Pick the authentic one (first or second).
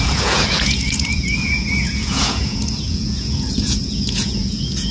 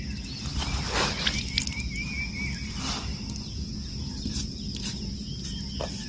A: second